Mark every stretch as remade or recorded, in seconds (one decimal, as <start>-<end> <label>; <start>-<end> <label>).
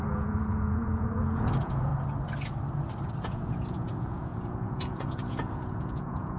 0.0-1.9 remade; 1.9-3.2 recorded; 3.2-6.4 remade